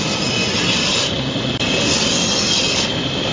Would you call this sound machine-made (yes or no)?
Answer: no